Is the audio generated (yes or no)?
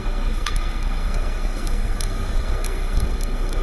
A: yes